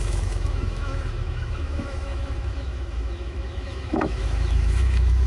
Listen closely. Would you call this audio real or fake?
fake